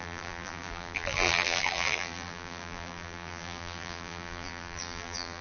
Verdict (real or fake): fake